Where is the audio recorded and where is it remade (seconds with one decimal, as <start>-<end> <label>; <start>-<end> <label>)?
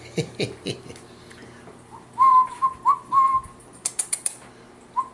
0.0-1.4 recorded; 1.4-4.5 remade; 4.5-5.1 recorded